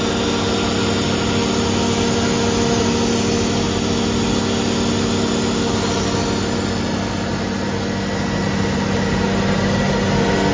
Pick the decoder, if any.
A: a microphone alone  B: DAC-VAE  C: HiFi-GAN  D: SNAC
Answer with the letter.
A